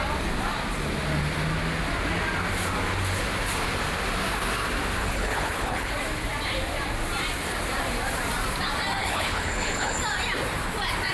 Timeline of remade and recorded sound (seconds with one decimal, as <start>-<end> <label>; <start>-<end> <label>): 0.0-5.0 recorded; 5.0-5.9 remade; 5.9-9.0 recorded; 9.0-10.0 remade; 10.0-11.1 recorded